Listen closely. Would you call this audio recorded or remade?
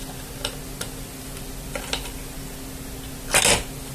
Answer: recorded